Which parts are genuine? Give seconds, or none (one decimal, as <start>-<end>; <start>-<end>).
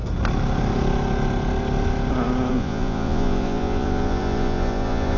0.0-2.5